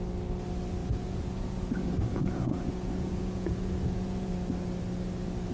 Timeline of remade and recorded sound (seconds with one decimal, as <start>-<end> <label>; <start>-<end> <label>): 0.0-0.8 recorded; 0.8-1.7 remade; 1.7-2.1 recorded; 2.1-4.3 remade; 4.3-5.5 recorded